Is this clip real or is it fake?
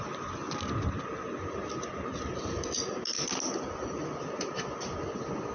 real